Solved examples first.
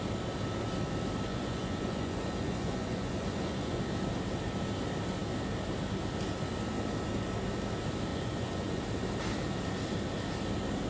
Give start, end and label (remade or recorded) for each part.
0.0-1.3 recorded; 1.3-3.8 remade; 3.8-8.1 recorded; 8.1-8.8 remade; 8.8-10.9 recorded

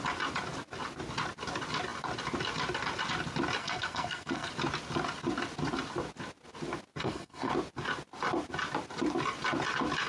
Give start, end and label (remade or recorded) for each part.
0.0-3.6 recorded; 3.6-4.5 remade; 4.5-7.0 recorded; 7.0-7.5 remade; 7.5-10.1 recorded